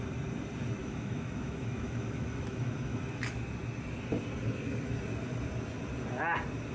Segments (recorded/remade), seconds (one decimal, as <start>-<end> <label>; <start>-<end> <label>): 0.0-0.8 recorded; 0.8-3.0 remade; 3.0-6.7 recorded